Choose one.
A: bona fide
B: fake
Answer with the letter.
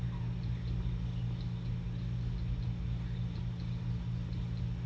A